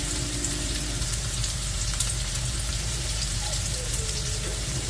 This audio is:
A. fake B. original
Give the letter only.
A